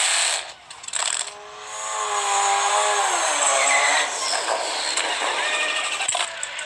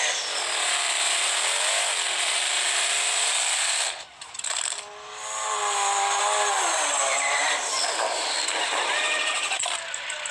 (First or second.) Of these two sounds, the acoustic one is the first